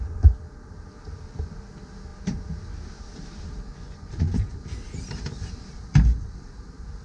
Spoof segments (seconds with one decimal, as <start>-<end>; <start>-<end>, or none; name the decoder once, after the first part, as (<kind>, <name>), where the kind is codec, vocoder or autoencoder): 3.7-4.6 (vocoder, Vocos)